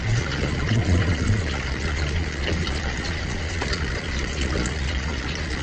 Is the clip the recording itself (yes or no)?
no